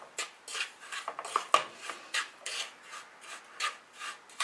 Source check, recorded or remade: recorded